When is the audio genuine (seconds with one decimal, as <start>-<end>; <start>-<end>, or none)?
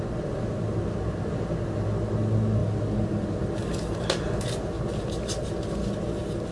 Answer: 0.0-6.5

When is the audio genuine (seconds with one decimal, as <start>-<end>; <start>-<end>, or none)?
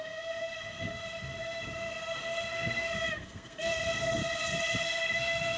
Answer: 4.2-4.8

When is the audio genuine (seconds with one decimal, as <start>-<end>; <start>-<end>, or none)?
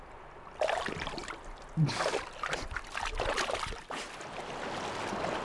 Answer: 0.0-5.4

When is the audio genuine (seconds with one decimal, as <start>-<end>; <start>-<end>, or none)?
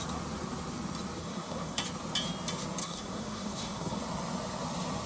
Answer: 0.0-1.2; 1.8-2.8; 4.0-5.1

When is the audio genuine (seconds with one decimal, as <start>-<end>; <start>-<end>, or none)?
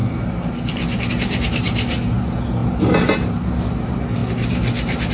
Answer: 0.0-5.1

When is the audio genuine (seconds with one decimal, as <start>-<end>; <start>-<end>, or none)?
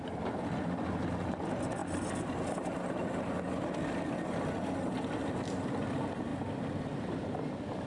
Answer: 0.0-7.9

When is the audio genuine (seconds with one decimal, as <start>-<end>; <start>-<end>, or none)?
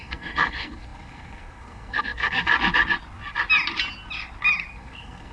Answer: 2.5-4.7